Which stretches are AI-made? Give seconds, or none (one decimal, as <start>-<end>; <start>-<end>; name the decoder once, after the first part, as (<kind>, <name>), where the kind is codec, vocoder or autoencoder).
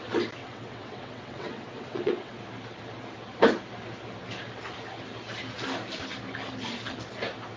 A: 0.4-2.4 (vocoder, WaveNeXt)